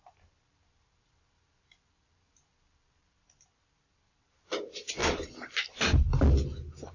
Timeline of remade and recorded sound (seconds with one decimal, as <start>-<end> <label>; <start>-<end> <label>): 0.0-6.9 recorded